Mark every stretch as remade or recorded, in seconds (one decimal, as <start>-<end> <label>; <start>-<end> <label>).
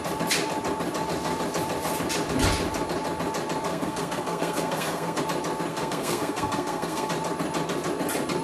0.0-3.7 recorded; 3.7-5.2 remade; 5.2-5.7 recorded; 5.7-7.1 remade; 7.1-8.4 recorded